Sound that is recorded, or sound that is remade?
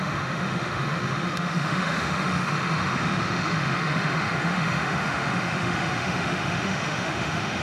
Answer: remade